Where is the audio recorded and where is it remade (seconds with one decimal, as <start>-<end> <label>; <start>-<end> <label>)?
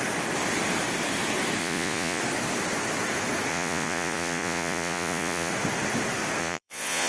0.0-1.6 recorded; 1.6-2.2 remade; 2.2-3.5 recorded; 3.5-5.5 remade; 5.5-6.4 recorded; 6.4-7.1 remade